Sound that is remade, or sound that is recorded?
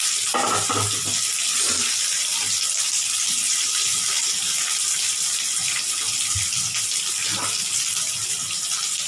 recorded